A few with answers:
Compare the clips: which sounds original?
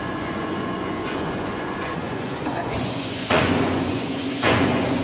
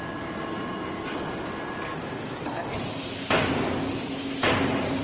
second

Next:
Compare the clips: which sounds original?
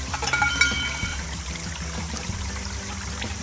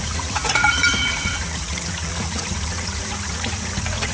first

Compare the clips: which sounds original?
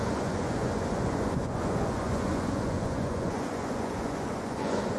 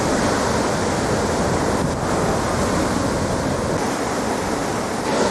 second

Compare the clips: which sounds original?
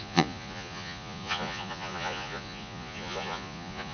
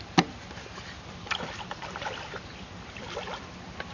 second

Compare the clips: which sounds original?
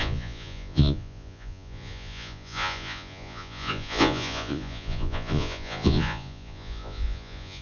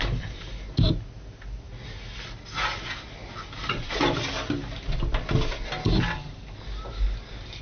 second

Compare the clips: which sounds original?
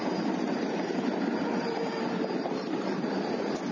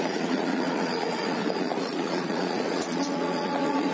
first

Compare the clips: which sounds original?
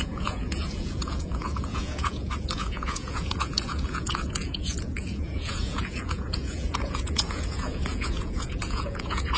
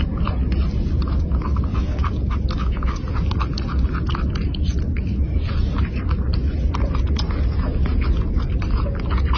second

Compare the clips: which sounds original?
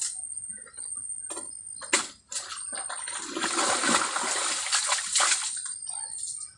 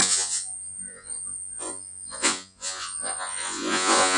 first